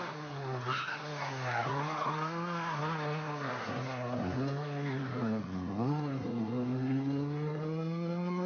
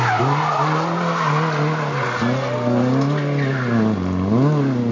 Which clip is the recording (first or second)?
second